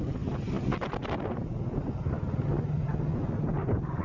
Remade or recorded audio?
recorded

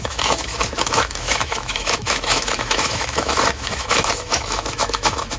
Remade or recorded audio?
remade